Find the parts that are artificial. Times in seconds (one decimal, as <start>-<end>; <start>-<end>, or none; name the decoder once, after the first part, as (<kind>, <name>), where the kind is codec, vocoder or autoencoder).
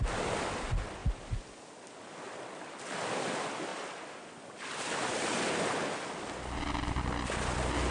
none